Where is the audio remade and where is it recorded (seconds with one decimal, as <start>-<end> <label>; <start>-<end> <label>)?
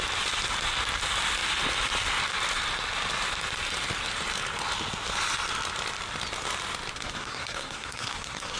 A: 0.0-6.9 recorded; 6.9-8.6 remade